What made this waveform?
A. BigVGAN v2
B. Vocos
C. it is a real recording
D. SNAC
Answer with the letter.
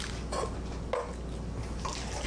C